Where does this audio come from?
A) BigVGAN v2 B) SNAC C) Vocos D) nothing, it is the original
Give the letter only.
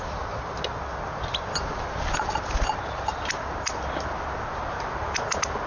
D